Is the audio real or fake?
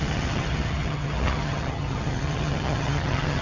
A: fake